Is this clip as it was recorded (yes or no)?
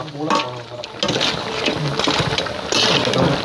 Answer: yes